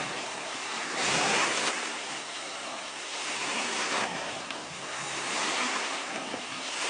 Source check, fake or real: fake